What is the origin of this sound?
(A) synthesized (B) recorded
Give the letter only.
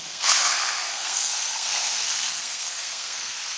A